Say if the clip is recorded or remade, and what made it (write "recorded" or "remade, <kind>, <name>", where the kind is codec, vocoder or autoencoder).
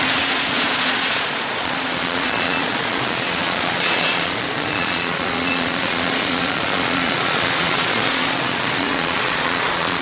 remade, vocoder, Vocos